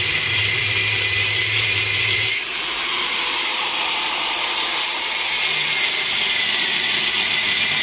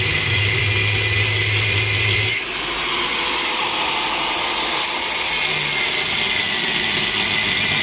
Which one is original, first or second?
second